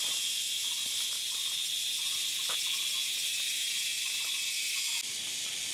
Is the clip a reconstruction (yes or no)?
no